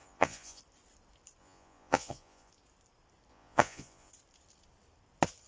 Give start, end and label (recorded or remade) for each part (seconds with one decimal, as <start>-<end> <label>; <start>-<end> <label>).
0.0-0.6 remade; 0.6-1.4 recorded; 1.4-2.5 remade; 2.5-3.3 recorded; 3.3-4.1 remade; 4.1-5.5 recorded